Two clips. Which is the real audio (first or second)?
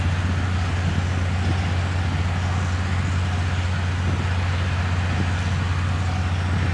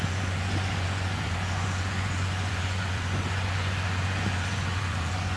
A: first